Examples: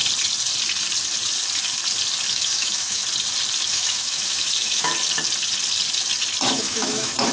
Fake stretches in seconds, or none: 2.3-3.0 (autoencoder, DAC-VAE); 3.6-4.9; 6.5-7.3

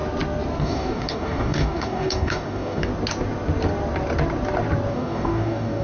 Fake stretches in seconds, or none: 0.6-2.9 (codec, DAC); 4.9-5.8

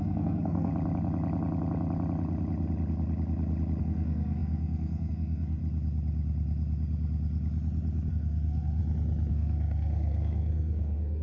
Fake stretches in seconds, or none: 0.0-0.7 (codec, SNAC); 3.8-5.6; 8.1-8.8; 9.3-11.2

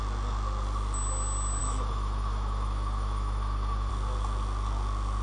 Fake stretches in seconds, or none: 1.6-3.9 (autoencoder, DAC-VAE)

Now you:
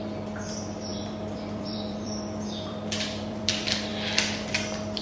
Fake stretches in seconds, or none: 0.9-3.5 (vocoder, BigVGAN v2)

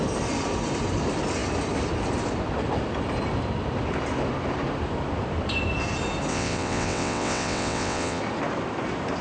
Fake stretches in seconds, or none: 6.3-8.2 (vocoder, WaveNeXt)

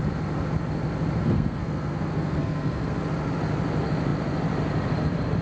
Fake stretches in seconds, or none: 1.2-3.0 (codec, SNAC)